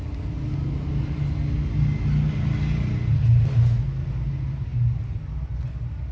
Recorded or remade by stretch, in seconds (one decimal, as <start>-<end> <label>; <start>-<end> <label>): 0.0-6.1 recorded